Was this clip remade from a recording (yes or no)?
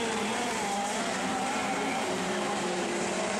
yes